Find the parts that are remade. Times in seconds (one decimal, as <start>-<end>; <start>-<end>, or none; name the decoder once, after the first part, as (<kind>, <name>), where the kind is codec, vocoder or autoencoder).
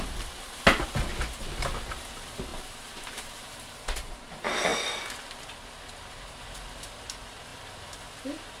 2.5-4.3 (vocoder, BigVGAN v2)